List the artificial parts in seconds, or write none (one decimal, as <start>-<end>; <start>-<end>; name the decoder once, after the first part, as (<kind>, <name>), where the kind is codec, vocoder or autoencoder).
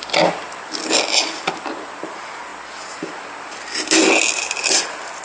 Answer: none